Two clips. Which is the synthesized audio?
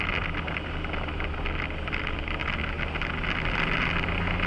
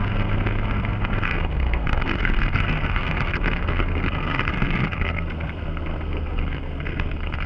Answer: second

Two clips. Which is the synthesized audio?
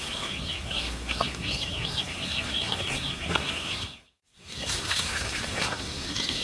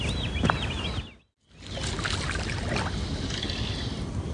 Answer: first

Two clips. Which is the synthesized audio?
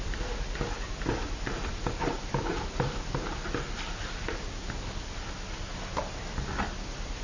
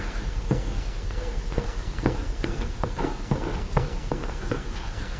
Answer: second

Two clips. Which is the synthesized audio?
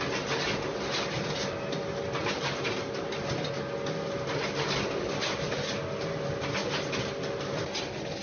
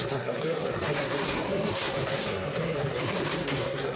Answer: second